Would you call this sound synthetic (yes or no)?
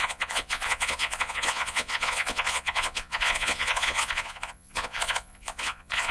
yes